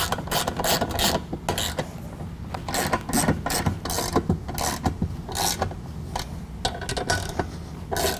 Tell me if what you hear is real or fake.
real